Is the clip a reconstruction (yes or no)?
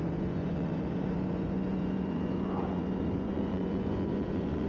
yes